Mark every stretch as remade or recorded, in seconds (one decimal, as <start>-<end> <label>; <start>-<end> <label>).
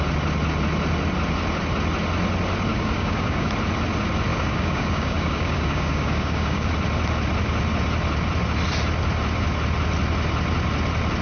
0.0-2.7 recorded; 2.7-3.5 remade; 3.5-4.3 recorded; 4.3-6.7 remade; 6.7-11.2 recorded